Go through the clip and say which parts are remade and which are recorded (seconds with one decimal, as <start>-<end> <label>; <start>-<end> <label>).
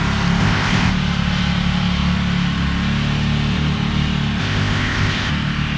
0.0-0.4 recorded; 0.4-0.9 remade; 0.9-4.4 recorded; 4.4-5.3 remade; 5.3-5.8 recorded